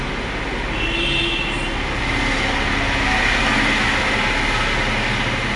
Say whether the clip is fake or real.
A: real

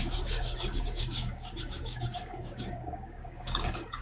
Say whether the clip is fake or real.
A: fake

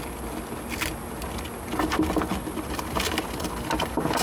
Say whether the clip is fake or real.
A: real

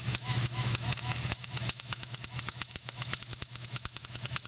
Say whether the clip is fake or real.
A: fake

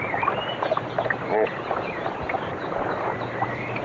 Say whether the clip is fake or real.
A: real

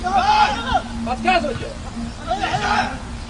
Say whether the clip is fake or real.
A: real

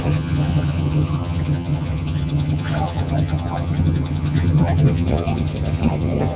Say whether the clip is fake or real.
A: fake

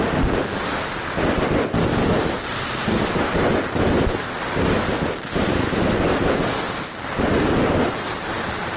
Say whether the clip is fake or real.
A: real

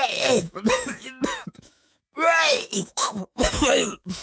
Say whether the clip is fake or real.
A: fake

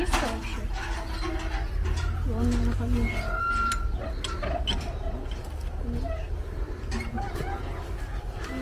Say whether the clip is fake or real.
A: real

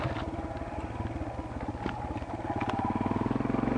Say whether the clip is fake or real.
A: real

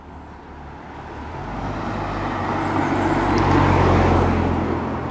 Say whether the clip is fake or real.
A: real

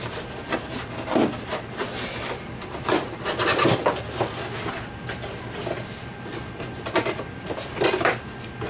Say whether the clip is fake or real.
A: real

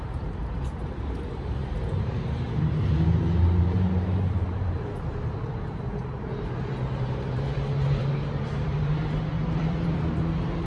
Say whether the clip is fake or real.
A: fake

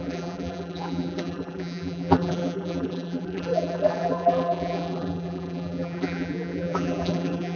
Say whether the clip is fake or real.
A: fake